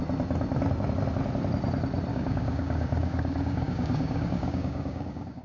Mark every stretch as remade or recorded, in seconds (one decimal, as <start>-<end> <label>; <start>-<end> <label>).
0.0-2.1 recorded; 2.1-5.4 remade